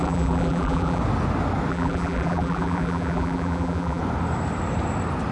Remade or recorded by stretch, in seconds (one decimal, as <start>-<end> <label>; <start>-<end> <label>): 0.0-1.0 remade; 1.0-1.7 recorded; 1.7-4.0 remade; 4.0-5.3 recorded